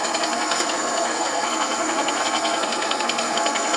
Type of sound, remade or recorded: remade